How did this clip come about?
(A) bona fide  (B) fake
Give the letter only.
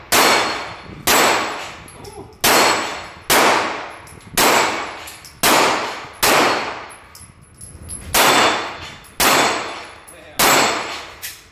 A